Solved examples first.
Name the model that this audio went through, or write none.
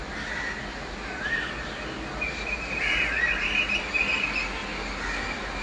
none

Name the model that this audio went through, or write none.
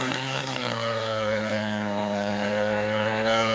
codec, SNAC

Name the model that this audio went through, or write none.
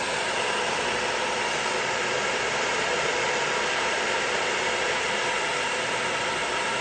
none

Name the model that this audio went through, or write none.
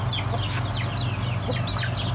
none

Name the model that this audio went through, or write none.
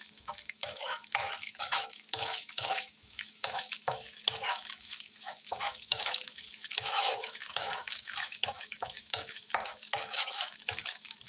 autoencoder, DAC-VAE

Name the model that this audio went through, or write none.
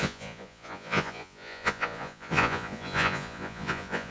vocoder, Vocos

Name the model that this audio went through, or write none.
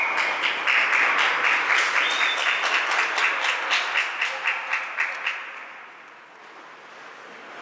none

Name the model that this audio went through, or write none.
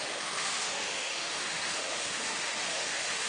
autoencoder, DAC-VAE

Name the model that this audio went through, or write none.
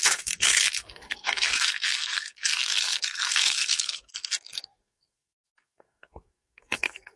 codec, SNAC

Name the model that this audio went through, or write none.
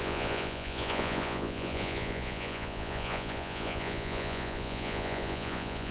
vocoder, Vocos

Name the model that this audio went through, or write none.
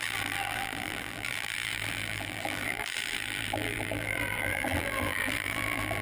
vocoder, BigVGAN v2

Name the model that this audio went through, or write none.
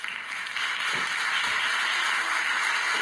vocoder, BigVGAN v2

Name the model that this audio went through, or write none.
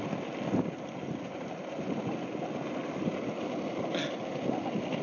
none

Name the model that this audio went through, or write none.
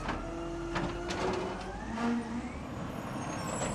none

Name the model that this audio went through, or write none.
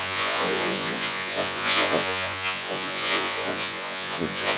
vocoder, Vocos